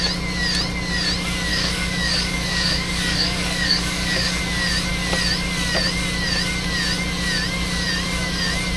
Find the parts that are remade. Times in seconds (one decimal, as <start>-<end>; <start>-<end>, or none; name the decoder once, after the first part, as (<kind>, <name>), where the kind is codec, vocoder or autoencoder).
1.5-4.4 (codec, DAC)